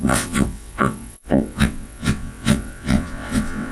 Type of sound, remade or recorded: remade